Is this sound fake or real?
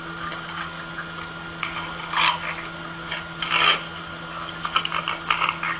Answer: real